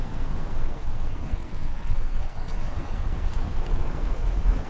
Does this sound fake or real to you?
fake